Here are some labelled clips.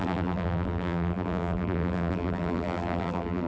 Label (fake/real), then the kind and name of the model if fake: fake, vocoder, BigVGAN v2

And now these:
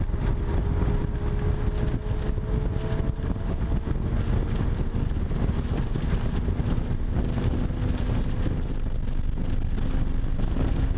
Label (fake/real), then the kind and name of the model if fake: real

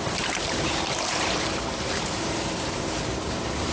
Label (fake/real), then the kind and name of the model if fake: fake, vocoder, BigVGAN v2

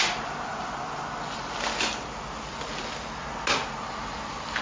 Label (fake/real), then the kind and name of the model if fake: real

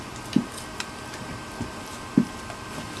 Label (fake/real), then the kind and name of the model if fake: real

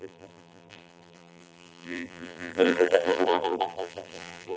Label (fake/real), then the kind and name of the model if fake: fake, vocoder, BigVGAN v2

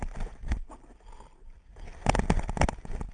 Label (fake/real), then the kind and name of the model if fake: real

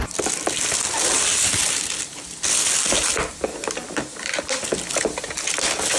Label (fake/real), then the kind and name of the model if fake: real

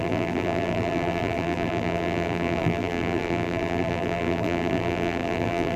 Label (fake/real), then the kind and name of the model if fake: fake, vocoder, BigVGAN v2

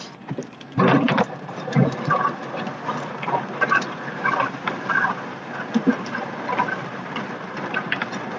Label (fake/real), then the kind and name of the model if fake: fake, vocoder, BigVGAN v2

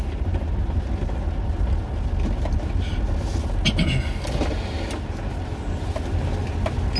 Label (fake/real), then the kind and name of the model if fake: real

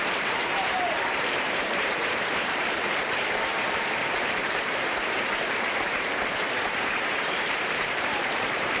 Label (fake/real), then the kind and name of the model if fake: fake, vocoder, BigVGAN v2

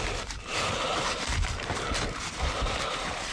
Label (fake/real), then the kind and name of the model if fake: fake, vocoder, BigVGAN v2